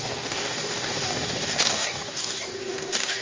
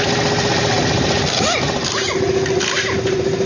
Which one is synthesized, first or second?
first